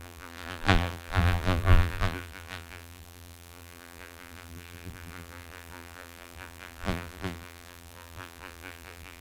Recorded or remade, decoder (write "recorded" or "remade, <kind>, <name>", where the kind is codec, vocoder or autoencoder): remade, vocoder, BigVGAN v2